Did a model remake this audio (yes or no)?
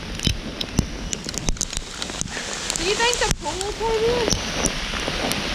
no